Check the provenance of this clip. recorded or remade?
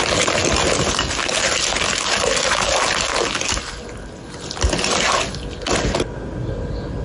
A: recorded